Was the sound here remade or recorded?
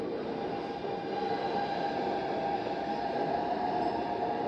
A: recorded